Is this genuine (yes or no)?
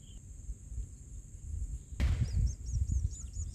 yes